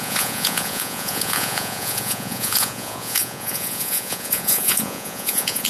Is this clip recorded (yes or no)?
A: no